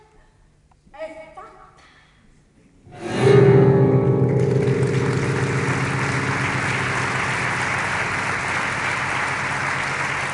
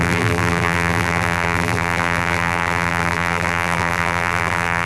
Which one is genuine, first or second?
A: first